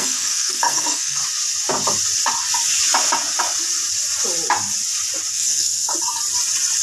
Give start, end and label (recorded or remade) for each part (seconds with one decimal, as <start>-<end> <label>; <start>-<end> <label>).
0.0-1.2 remade; 1.2-5.3 recorded; 5.3-5.9 remade; 5.9-6.8 recorded